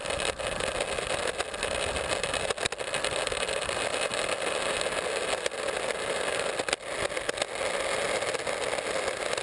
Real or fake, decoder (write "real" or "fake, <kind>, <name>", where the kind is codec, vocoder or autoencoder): real